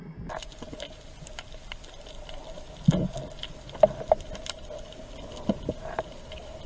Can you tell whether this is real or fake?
real